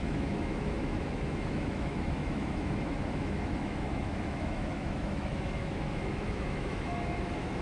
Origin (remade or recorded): remade